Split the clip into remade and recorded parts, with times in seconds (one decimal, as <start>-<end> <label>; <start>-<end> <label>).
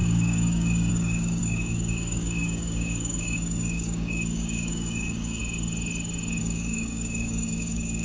0.0-5.4 remade; 5.4-6.4 recorded; 6.4-8.0 remade